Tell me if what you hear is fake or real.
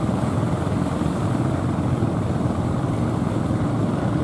real